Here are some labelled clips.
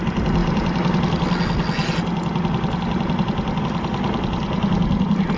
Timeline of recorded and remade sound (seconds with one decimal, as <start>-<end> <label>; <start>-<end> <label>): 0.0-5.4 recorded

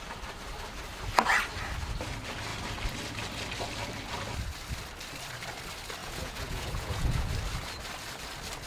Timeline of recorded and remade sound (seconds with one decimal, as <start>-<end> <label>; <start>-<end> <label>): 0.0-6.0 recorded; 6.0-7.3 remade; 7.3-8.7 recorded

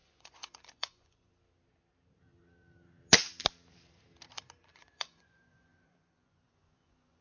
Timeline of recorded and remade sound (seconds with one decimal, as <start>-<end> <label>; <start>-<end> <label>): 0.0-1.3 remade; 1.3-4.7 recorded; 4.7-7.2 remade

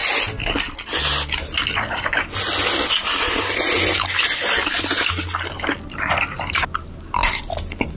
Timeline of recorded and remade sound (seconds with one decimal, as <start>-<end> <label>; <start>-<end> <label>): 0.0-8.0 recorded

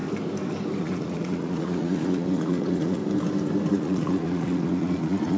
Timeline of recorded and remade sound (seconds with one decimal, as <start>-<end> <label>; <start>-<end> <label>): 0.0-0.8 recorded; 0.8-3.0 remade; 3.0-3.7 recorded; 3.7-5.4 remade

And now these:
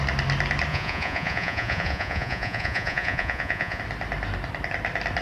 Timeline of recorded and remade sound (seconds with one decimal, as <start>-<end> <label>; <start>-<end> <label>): 0.0-0.7 recorded; 0.7-3.8 remade; 3.8-5.2 recorded